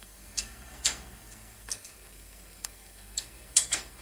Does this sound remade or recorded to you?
remade